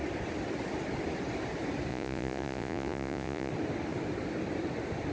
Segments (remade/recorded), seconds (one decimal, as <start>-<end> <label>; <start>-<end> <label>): 0.0-1.9 recorded; 1.9-3.5 remade; 3.5-5.1 recorded